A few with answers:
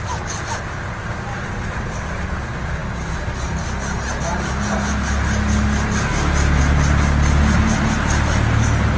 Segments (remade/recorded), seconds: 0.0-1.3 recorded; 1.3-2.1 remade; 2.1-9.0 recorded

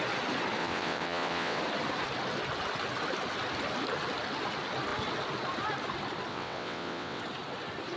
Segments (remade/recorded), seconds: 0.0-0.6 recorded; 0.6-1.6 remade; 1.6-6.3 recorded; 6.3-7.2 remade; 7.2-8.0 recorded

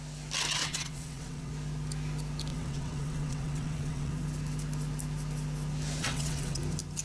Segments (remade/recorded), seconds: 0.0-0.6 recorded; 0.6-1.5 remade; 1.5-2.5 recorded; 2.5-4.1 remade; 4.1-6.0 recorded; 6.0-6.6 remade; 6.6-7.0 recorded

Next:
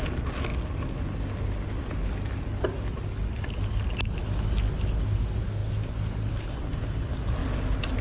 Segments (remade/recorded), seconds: 0.0-8.0 recorded

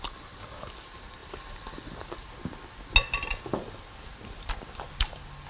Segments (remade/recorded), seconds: 0.0-5.5 recorded

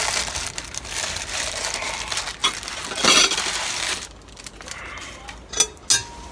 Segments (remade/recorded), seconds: 0.0-6.3 recorded